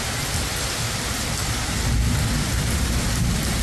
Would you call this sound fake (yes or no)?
no